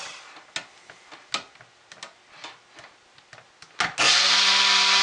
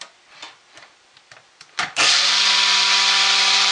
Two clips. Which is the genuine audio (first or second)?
first